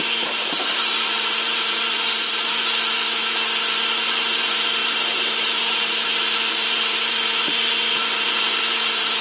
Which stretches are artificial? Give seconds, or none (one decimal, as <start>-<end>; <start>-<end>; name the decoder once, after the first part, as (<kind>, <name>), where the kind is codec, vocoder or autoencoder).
0.0-2.6 (vocoder, BigVGAN v2); 4.0-9.2